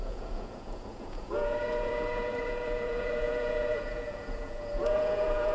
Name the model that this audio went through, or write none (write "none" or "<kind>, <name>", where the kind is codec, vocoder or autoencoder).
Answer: vocoder, Vocos